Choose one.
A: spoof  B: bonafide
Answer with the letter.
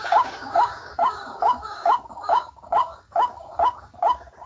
A